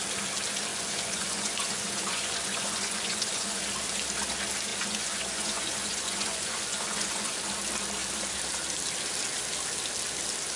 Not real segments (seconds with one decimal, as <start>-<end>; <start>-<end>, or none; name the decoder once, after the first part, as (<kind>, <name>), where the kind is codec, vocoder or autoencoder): 0.7-3.6 (vocoder, Vocos); 4.7-7.4